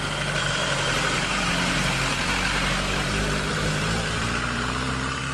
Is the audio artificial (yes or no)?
yes